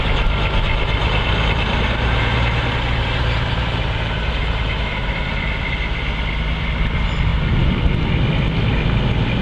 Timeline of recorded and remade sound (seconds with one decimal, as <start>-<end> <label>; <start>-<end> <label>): 0.0-1.0 recorded; 1.0-5.2 remade; 5.2-9.4 recorded